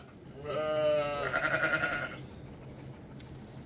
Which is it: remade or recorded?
recorded